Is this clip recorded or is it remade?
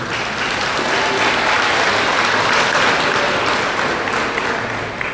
recorded